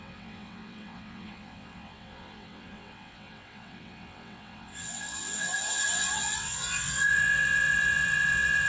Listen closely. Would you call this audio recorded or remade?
remade